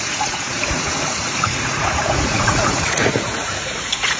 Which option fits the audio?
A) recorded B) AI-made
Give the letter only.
B